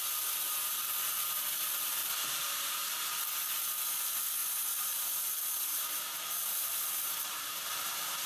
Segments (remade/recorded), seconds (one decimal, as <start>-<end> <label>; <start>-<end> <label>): 0.0-2.0 recorded; 2.0-3.0 remade; 3.0-4.4 recorded; 4.4-8.3 remade